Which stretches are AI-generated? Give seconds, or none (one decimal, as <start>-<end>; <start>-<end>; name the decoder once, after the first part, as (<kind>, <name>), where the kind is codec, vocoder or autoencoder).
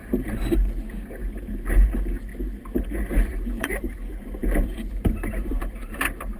0.0-1.2 (vocoder, BigVGAN v2); 1.7-2.3; 2.8-6.4